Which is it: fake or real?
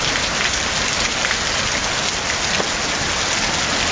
real